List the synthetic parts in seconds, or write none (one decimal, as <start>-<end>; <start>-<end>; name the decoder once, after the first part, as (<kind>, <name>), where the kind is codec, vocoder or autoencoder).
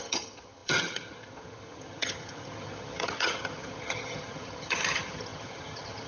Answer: 0.0-6.1 (vocoder, HiFi-GAN)